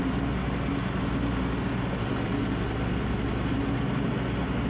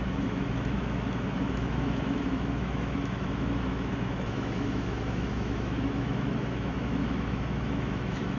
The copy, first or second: second